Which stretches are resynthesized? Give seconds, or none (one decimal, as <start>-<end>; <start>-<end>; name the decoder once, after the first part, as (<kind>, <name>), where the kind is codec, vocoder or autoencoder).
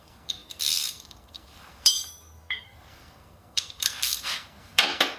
0.0-5.2 (codec, SNAC)